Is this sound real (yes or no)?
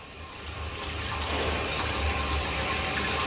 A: no